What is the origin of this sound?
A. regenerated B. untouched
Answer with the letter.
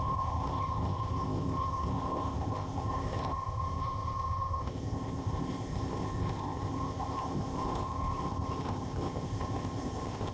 A